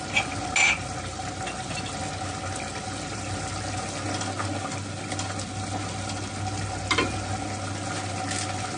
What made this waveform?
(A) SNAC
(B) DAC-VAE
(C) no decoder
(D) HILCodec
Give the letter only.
C